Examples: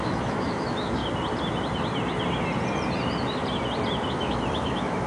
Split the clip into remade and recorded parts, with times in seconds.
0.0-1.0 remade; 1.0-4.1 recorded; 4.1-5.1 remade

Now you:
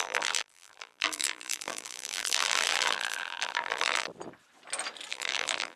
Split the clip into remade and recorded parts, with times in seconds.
0.0-4.1 remade; 4.1-5.1 recorded; 5.1-5.8 remade